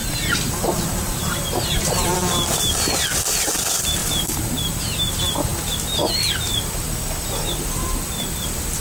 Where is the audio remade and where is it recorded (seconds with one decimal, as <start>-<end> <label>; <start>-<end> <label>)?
0.0-2.1 remade; 2.1-4.0 recorded; 4.0-4.8 remade; 4.8-8.8 recorded